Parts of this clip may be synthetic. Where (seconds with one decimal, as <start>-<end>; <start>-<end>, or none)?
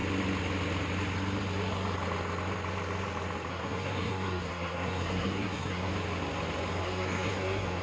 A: 3.5-5.9; 6.8-7.8